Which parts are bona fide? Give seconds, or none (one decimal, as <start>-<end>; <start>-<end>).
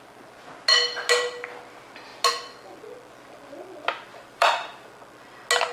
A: 0.0-4.1; 4.9-5.7